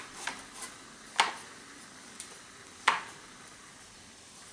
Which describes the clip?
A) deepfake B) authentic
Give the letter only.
B